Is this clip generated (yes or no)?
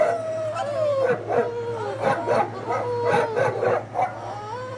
no